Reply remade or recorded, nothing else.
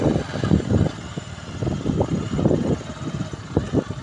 recorded